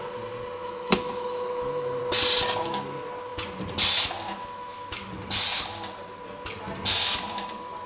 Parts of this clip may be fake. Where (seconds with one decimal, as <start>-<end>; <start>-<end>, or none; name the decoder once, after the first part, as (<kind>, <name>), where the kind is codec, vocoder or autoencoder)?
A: 0.6-2.0 (autoencoder, DAC-VAE); 4.4-5.1